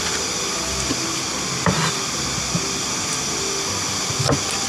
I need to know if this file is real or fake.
real